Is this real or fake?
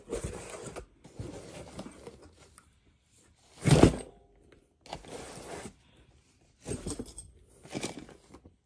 real